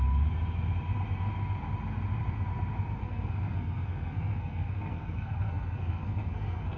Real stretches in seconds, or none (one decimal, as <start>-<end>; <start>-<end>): 0.0-3.0